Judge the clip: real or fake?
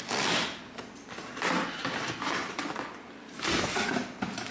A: real